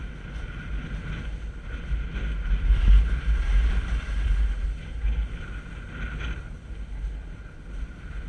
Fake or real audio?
real